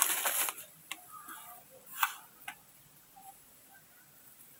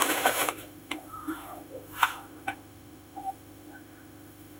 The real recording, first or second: first